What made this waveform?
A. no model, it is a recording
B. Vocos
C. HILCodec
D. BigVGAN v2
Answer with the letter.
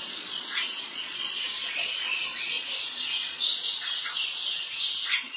B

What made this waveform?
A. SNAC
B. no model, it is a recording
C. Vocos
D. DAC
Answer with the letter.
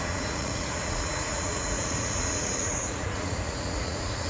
C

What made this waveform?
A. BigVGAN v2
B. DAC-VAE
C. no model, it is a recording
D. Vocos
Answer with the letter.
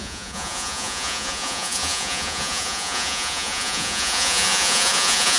D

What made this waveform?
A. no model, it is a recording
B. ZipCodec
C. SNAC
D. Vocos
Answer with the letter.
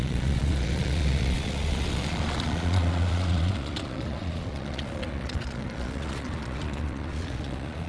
D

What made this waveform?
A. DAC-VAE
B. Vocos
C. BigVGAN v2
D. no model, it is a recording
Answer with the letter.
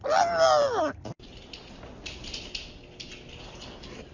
D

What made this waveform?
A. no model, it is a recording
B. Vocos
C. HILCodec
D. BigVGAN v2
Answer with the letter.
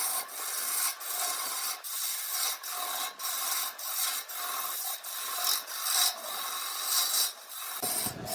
A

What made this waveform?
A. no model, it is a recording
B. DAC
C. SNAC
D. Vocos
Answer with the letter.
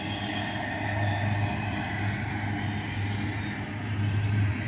A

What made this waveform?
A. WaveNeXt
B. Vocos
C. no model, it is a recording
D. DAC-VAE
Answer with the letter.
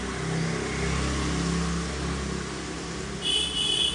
C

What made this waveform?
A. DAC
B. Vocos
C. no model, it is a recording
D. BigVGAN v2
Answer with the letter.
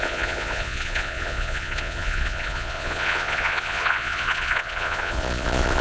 B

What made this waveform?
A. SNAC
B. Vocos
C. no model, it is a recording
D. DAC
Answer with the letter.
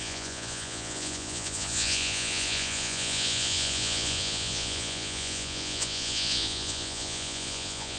B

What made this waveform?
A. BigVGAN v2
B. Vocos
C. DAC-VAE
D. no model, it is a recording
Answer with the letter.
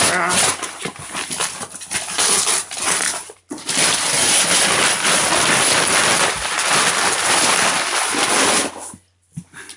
D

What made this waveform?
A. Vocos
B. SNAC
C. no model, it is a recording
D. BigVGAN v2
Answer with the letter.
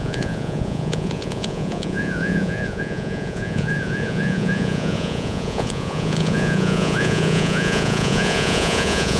A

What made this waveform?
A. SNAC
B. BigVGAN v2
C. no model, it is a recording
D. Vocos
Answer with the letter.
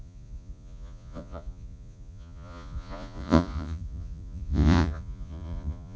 D